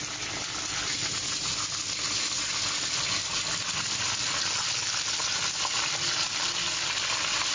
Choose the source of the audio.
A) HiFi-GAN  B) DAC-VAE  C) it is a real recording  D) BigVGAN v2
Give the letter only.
C